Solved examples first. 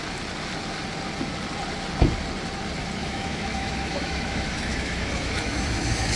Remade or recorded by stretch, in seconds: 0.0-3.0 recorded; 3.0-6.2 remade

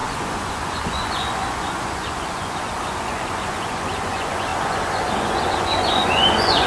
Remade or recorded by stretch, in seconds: 0.0-6.7 remade

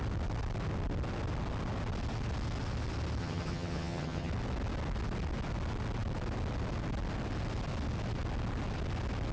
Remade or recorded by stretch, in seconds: 0.0-3.2 recorded; 3.2-4.3 remade; 4.3-9.3 recorded

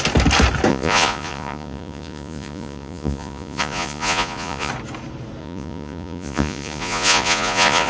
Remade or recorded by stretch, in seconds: 0.0-0.7 recorded; 0.7-4.7 remade; 4.7-5.4 recorded; 5.4-7.9 remade